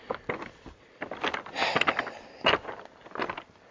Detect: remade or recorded recorded